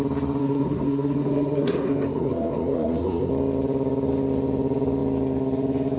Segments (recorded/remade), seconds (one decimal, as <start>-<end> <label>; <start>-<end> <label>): 0.0-0.4 recorded; 0.4-3.3 remade; 3.3-6.0 recorded

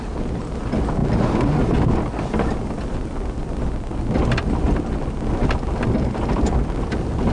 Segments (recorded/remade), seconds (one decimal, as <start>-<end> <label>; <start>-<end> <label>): 0.0-7.3 recorded